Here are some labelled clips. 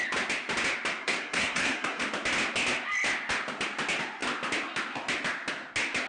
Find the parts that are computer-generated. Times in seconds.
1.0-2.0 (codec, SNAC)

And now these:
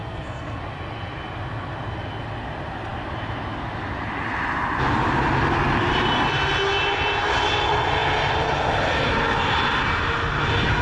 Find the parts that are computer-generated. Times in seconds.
0.0-0.6 (codec, SNAC)

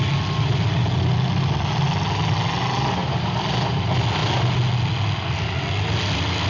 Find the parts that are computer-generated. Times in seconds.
none

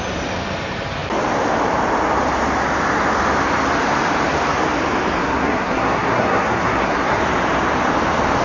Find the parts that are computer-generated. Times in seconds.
5.2-7.2 (codec, SNAC)

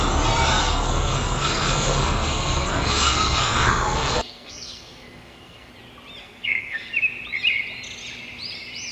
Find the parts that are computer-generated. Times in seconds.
0.6-5.7 (codec, SNAC); 6.2-6.9